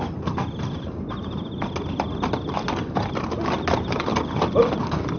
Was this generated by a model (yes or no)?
no